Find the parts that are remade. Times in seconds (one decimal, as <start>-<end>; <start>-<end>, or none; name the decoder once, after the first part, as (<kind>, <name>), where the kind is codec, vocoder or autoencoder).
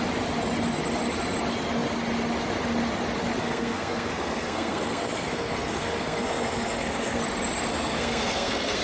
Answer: 3.4-7.2 (codec, SNAC); 7.7-8.8